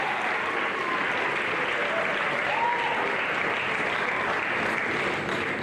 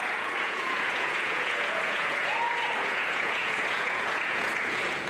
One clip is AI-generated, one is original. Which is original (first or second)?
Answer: first